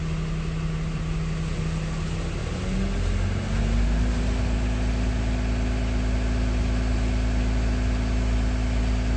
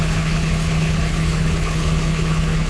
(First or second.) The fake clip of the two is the second